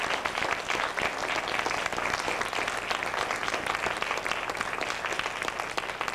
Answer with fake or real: real